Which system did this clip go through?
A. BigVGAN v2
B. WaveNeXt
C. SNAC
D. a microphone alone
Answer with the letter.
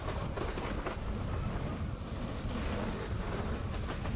D